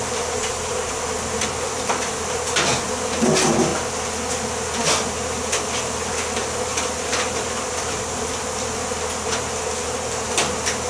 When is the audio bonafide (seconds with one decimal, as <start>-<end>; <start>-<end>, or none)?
0.0-6.7; 8.0-10.9